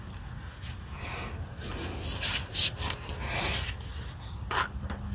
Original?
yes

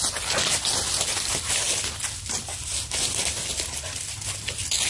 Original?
yes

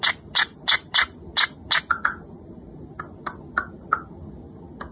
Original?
yes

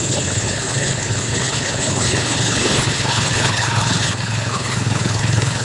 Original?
no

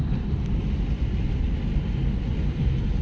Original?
yes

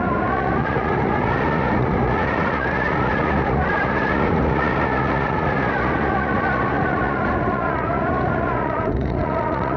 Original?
no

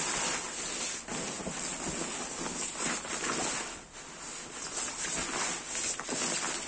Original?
yes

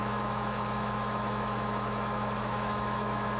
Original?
no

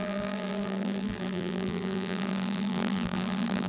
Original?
no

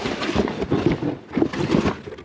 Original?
yes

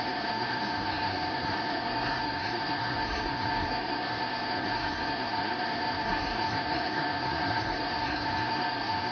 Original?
no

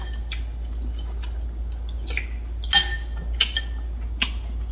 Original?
yes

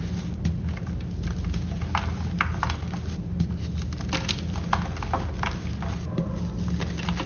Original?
yes